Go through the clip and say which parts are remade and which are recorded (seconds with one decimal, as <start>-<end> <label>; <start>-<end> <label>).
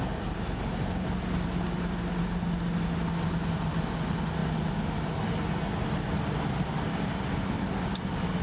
0.0-8.4 recorded